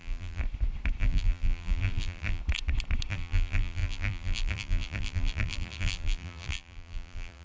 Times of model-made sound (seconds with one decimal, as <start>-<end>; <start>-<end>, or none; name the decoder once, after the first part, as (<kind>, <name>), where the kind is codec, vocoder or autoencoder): 0.0-0.4 (vocoder, BigVGAN v2); 1.0-2.4; 3.1-7.4